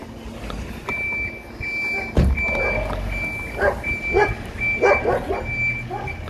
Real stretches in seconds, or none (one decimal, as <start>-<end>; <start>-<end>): 0.0-6.3

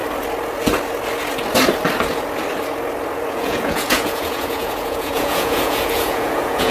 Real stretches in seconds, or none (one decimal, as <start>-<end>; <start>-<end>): 0.0-3.3

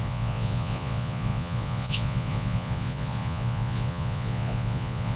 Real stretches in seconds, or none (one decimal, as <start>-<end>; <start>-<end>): none